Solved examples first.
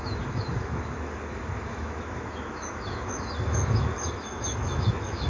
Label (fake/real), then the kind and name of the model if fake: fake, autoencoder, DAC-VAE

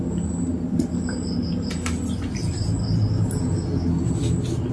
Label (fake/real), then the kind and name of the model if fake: real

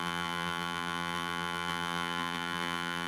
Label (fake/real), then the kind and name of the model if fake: fake, vocoder, BigVGAN v2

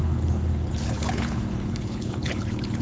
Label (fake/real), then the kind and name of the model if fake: fake, codec, HILCodec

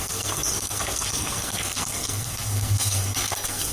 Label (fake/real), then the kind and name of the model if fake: fake, codec, SNAC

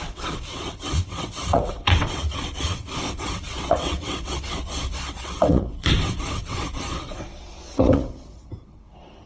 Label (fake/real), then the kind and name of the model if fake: fake, vocoder, WaveNeXt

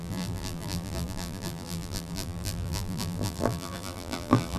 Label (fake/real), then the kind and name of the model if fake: fake, vocoder, BigVGAN v2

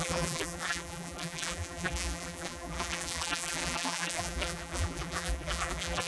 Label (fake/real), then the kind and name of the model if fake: fake, vocoder, BigVGAN v2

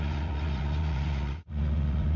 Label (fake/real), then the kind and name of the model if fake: fake, vocoder, Vocos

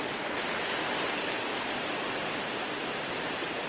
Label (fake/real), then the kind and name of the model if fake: real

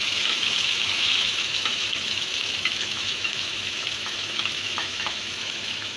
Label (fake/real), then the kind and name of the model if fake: fake, autoencoder, DAC-VAE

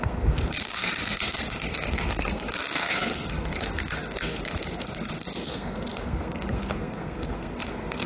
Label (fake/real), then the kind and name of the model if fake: fake, codec, SNAC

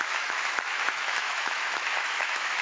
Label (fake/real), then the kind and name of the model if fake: fake, autoencoder, DAC-VAE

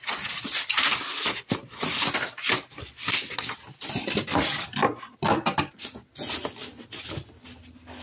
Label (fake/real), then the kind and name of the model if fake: real